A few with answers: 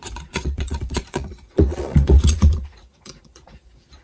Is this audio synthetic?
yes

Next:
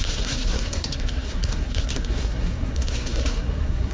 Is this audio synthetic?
yes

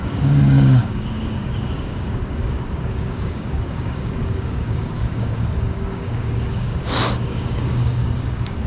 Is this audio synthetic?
yes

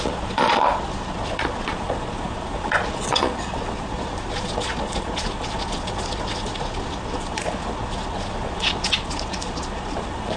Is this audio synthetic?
yes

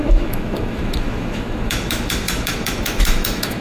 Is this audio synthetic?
yes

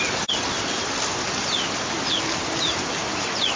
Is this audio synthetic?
no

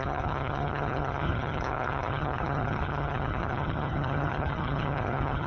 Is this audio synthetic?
yes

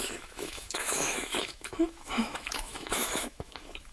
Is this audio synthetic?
yes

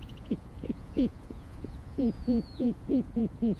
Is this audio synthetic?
yes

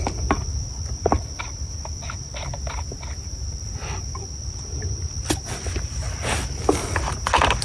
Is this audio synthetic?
no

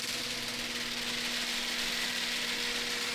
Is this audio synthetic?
no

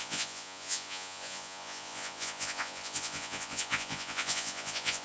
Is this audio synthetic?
yes